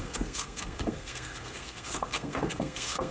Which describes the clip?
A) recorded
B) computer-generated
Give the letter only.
B